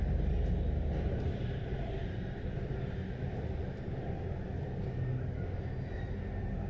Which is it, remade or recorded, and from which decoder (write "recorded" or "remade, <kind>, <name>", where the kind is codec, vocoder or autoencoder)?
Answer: recorded